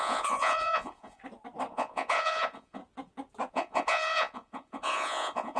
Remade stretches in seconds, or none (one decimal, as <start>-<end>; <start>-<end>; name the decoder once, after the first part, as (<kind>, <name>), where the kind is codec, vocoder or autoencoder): 0.0-1.2 (vocoder, Vocos); 1.7-2.8; 3.5-5.6